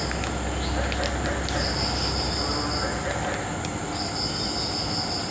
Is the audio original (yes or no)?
yes